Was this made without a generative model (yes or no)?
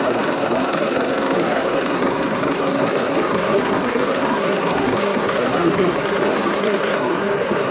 no